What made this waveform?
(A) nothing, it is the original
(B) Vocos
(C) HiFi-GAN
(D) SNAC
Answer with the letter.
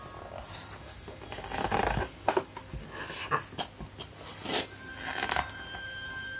A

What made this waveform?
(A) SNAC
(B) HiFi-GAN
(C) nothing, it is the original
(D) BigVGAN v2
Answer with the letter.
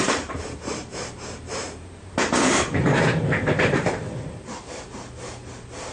D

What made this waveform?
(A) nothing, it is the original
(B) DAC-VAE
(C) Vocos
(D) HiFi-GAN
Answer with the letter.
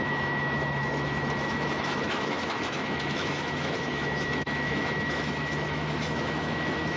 B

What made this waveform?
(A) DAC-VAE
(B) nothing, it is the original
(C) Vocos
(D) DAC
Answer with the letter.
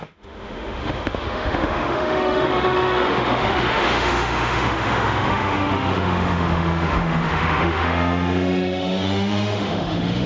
A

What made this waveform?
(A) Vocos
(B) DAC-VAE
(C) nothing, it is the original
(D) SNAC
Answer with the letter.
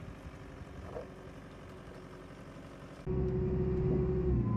C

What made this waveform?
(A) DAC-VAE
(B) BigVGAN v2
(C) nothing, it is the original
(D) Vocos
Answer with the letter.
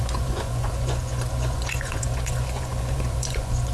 D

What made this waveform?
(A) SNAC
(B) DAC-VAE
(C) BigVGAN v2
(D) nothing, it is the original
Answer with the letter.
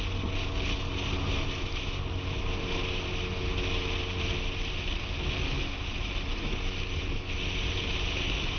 D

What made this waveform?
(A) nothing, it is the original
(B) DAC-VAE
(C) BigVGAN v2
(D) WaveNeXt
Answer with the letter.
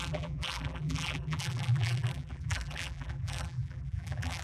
C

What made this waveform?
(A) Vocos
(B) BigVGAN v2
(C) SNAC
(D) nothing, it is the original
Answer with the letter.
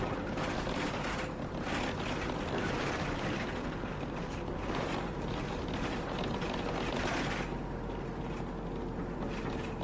D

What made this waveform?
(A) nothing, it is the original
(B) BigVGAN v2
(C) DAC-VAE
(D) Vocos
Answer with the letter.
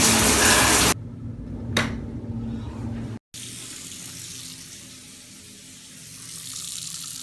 A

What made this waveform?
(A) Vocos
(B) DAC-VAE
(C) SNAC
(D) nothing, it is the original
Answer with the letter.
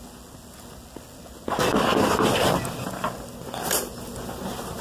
D